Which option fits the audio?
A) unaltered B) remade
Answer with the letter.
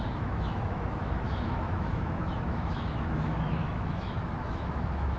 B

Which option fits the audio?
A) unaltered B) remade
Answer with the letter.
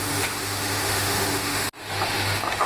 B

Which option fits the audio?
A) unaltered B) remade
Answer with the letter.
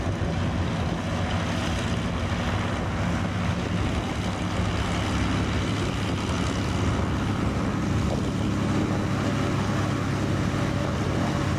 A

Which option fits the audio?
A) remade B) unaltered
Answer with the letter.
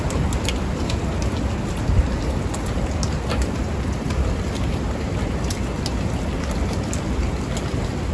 B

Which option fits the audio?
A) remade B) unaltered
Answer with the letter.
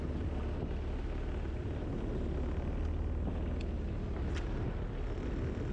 B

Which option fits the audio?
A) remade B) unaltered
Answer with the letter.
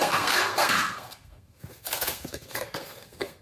A